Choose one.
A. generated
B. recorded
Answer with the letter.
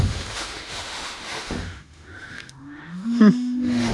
A